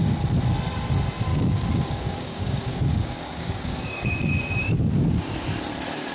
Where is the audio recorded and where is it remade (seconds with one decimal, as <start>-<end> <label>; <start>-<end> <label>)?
0.0-1.3 recorded; 1.3-4.9 remade; 4.9-6.1 recorded